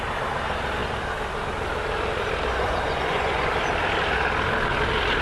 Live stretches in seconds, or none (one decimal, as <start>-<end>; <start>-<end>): 0.0-2.5; 3.5-5.2